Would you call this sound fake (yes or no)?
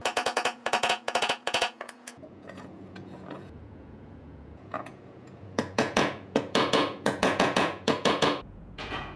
yes